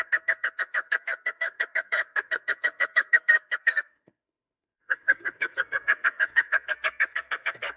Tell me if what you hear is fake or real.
fake